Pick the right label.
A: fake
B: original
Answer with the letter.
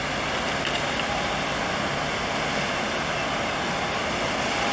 B